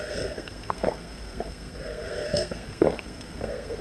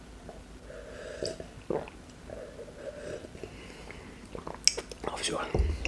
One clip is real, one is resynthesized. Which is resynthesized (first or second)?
first